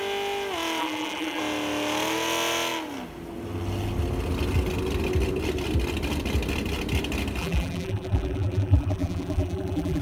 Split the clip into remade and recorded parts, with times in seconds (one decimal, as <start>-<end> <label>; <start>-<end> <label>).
0.0-0.8 recorded; 0.8-1.4 remade; 1.4-7.4 recorded; 7.4-10.0 remade